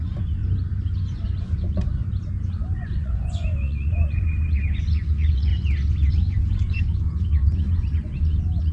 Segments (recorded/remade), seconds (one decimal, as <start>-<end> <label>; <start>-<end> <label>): 0.0-0.4 remade; 0.4-1.4 recorded; 1.4-2.0 remade; 2.0-2.5 recorded; 2.5-5.5 remade; 5.5-6.1 recorded; 6.1-8.7 remade